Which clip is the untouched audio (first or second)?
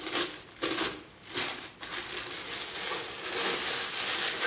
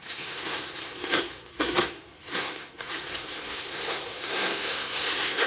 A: first